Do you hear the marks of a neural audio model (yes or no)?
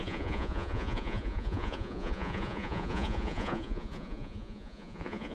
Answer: yes